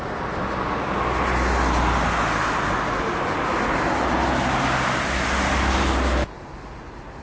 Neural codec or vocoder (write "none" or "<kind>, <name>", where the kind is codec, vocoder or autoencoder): none